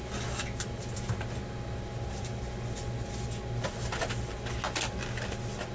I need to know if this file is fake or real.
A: real